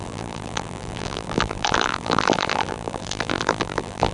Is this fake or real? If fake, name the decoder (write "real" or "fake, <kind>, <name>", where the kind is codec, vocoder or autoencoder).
fake, vocoder, BigVGAN v2